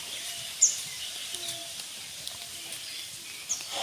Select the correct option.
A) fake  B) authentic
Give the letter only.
B